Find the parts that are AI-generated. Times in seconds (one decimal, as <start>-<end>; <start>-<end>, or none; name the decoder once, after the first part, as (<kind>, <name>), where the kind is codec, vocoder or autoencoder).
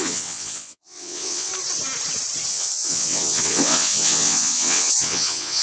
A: 0.0-1.5 (vocoder, WaveNeXt); 2.5-5.6